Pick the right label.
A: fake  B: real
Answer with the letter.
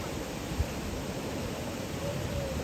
B